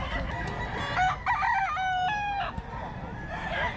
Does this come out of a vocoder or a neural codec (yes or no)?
no